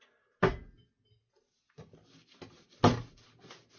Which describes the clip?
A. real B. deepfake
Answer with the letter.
A